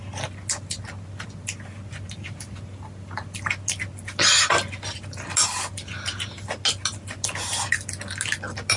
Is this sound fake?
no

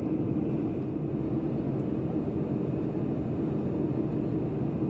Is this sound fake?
no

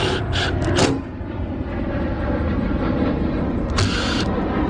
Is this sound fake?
no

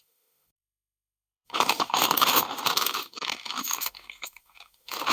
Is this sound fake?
yes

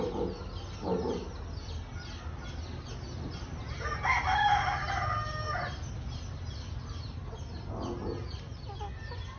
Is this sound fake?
no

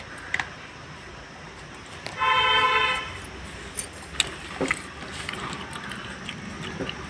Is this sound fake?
no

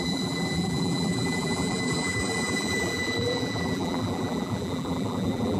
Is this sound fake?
yes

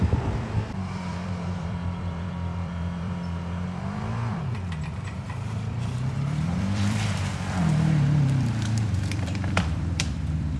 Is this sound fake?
yes